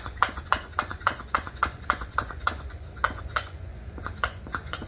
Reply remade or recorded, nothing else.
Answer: remade